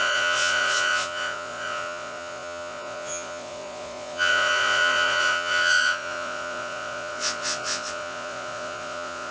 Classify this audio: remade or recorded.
remade